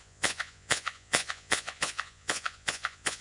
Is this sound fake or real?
fake